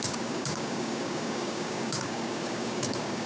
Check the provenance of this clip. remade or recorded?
remade